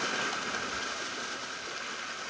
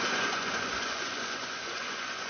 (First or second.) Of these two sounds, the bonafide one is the first